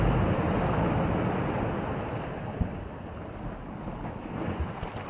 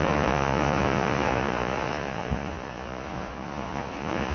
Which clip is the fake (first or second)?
second